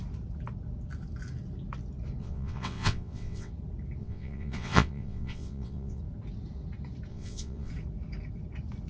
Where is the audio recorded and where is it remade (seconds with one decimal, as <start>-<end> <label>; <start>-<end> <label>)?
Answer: 0.0-2.2 recorded; 2.2-3.5 remade; 3.5-4.0 recorded; 4.0-6.0 remade; 6.0-7.1 recorded; 7.1-7.7 remade; 7.7-8.9 recorded